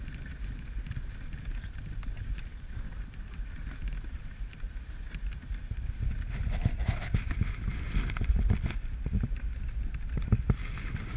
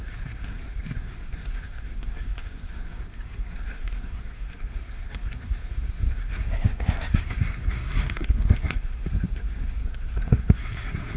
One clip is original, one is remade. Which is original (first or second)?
first